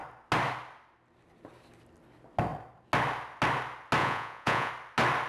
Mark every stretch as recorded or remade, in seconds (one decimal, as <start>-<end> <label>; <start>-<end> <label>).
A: 0.0-4.0 recorded; 4.0-4.7 remade; 4.7-5.3 recorded